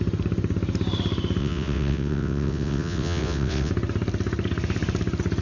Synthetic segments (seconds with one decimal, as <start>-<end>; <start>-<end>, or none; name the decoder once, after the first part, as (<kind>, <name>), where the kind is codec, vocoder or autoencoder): 1.4-3.7 (vocoder, WaveNeXt)